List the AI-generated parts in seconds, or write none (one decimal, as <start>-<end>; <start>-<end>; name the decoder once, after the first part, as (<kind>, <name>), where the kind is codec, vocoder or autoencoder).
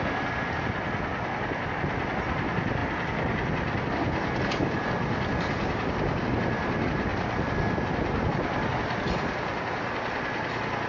none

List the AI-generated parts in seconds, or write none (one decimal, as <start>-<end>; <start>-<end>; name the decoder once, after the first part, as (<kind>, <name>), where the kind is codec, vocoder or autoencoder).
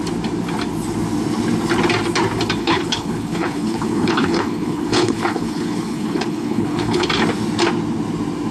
2.6-7.1 (codec, HILCodec)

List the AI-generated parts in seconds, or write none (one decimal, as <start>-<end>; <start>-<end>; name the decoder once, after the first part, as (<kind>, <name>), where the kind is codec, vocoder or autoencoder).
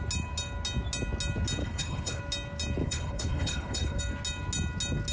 1.6-2.2 (codec, HILCodec); 2.8-4.0